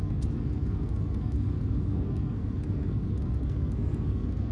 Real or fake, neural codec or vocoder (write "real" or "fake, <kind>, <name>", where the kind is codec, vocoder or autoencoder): fake, codec, SNAC